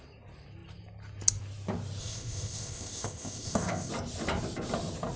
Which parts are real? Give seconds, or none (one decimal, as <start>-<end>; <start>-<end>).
0.0-2.0; 3.9-5.2